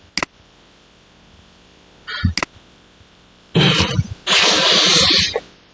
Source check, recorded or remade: recorded